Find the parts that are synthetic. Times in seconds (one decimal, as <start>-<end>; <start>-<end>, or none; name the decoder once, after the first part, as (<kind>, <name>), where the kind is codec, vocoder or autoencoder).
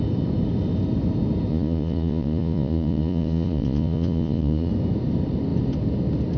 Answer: 1.5-4.7 (vocoder, Vocos)